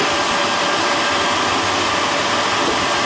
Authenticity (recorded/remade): recorded